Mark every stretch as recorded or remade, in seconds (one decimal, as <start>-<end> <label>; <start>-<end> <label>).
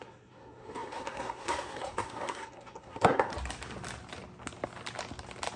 0.0-3.3 remade; 3.3-5.6 recorded